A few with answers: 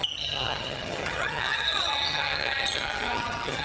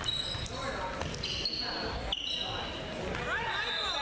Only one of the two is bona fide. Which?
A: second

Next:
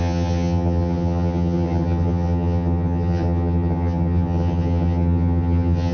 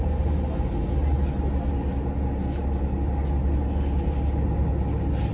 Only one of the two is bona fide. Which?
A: second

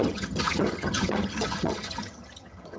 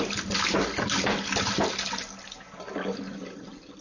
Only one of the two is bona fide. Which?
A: second